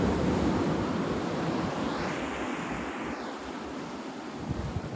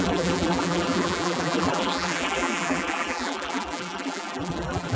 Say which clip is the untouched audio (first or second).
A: first